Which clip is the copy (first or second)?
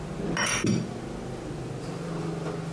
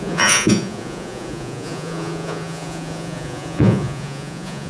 second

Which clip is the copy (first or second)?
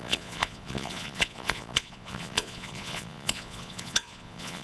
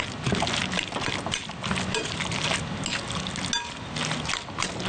first